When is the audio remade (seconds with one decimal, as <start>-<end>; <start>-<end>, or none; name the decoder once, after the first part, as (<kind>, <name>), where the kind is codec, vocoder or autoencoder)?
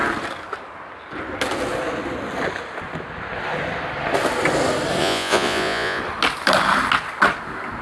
5.0-6.0 (vocoder, Vocos)